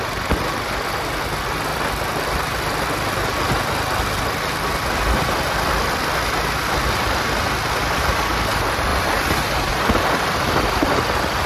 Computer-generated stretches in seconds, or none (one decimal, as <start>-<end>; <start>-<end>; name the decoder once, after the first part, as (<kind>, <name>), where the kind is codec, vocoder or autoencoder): none